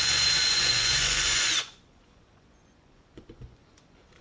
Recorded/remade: remade